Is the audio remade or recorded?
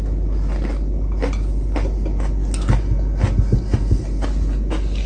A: recorded